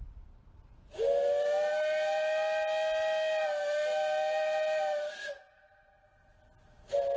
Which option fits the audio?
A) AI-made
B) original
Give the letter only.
B